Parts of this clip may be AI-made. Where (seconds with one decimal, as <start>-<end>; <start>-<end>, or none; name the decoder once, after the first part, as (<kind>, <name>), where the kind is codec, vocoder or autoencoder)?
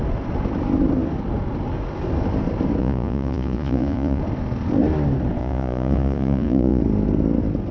2.8-4.2 (vocoder, Vocos); 5.4-6.8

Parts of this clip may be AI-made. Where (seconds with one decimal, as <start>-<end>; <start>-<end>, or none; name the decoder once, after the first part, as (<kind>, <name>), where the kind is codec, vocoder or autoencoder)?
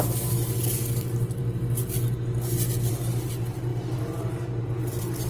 none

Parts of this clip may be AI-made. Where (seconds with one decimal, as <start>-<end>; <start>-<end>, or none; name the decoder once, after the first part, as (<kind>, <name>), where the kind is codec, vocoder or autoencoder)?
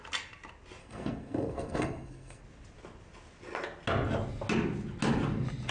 0.8-2.4 (codec, SNAC)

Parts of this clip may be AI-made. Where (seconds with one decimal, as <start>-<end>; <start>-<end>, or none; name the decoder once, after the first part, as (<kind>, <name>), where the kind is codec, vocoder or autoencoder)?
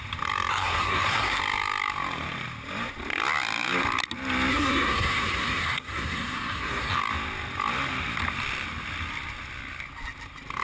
0.5-1.4 (codec, SNAC); 4.5-7.0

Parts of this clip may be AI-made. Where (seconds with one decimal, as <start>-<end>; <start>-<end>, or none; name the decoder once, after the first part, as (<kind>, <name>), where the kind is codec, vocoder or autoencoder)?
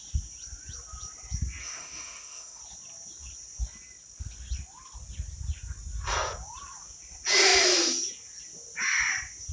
1.6-2.6 (autoencoder, DAC-VAE)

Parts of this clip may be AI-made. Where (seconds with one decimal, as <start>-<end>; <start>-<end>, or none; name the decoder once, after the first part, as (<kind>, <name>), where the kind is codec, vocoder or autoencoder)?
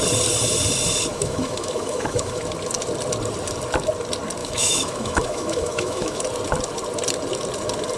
1.1-2.4 (autoencoder, DAC-VAE); 4.4-6.2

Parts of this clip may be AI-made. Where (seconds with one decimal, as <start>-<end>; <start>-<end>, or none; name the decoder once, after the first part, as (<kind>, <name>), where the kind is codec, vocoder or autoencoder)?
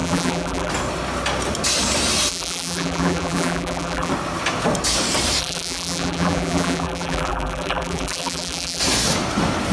0.0-0.7 (vocoder, BigVGAN v2); 2.3-4.1; 5.4-8.8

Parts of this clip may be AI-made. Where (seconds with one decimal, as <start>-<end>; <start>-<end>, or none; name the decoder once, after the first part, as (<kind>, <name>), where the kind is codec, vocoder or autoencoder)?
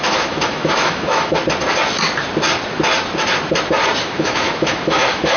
0.0-1.4 (autoencoder, DAC-VAE); 4.0-5.4